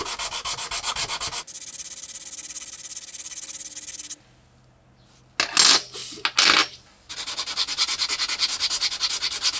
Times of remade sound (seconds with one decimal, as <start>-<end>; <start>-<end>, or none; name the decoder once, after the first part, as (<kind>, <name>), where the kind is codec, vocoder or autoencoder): none

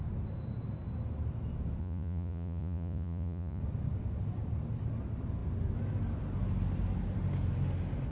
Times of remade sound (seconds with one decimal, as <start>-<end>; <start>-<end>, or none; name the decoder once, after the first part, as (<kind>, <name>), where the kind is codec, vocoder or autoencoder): 1.8-3.6 (vocoder, Vocos)

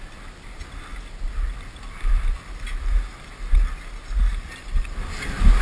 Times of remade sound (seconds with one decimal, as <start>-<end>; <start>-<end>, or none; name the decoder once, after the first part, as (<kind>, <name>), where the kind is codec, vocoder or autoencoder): none

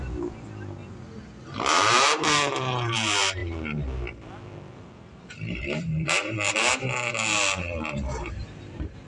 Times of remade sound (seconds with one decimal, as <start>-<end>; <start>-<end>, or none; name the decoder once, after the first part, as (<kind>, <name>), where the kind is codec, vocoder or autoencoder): 0.0-0.8 (vocoder, BigVGAN v2); 1.6-9.1

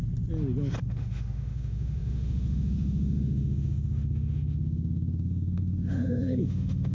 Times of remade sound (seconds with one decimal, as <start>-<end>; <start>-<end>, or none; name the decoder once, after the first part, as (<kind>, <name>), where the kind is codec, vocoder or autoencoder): 0.8-6.9 (autoencoder, DAC-VAE)

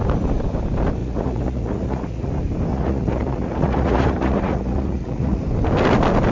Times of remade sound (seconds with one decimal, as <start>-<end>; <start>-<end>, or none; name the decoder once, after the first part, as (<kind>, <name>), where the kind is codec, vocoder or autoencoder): 1.0-2.3 (vocoder, Vocos); 2.7-5.4